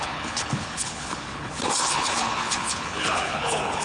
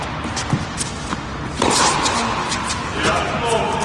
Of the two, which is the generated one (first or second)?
first